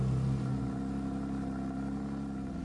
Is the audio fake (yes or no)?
no